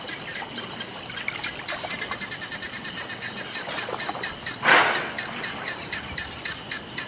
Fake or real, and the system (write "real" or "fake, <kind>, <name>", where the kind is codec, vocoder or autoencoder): real